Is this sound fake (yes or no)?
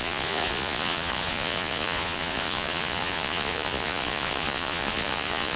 yes